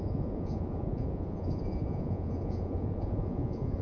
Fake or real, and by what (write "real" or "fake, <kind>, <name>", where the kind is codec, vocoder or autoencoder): fake, vocoder, Vocos